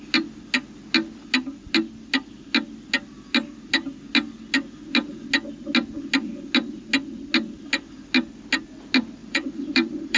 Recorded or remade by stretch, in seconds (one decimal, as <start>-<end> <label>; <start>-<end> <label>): 0.0-9.2 recorded; 9.2-10.2 remade